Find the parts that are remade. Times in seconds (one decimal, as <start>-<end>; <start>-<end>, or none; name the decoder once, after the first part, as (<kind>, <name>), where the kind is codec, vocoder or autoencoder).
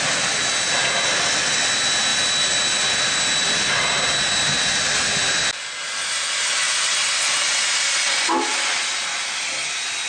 none